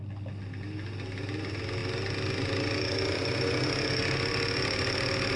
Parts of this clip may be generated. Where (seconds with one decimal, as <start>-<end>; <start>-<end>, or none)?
none